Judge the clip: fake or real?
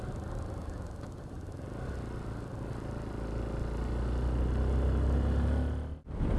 real